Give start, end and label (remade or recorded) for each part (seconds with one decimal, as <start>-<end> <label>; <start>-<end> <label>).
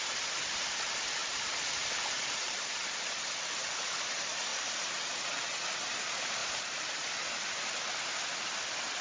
0.0-1.2 recorded; 1.2-2.6 remade; 2.6-4.5 recorded; 4.5-5.1 remade; 5.1-6.4 recorded; 6.4-7.1 remade; 7.1-9.0 recorded